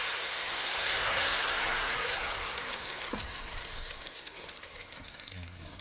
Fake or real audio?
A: fake